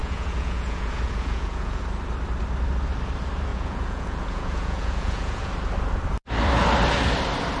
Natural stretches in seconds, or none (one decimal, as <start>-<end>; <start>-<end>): 1.8-3.5; 5.5-7.6